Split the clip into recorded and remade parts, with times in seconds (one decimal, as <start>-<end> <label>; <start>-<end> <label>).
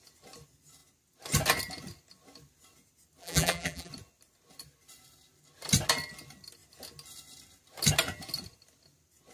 0.0-3.2 recorded; 3.2-3.9 remade; 3.9-9.3 recorded